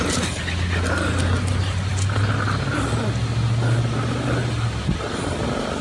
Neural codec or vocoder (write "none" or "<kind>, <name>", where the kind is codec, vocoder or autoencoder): none